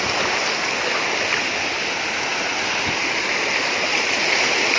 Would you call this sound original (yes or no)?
yes